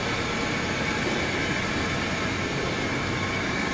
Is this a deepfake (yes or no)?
no